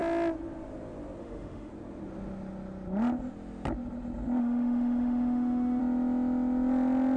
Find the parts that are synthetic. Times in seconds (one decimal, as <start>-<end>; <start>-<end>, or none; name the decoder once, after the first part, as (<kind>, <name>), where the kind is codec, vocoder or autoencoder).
1.2-1.7 (autoencoder, DAC-VAE); 4.4-5.8